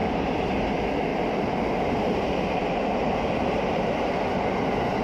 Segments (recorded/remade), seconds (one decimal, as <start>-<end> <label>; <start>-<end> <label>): 0.0-0.5 remade; 0.5-1.1 recorded; 1.1-4.1 remade; 4.1-5.0 recorded